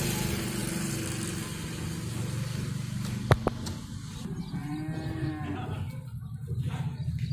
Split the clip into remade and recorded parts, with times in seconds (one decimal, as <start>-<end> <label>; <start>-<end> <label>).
0.0-4.6 recorded; 4.6-5.3 remade; 5.3-7.3 recorded